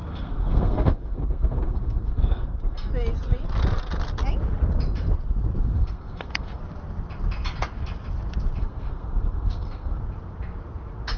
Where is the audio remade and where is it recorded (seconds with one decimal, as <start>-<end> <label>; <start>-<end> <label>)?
0.0-2.9 remade; 2.9-5.6 recorded; 5.6-6.6 remade; 6.6-8.6 recorded; 8.6-10.0 remade; 10.0-11.2 recorded